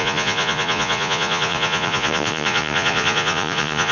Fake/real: fake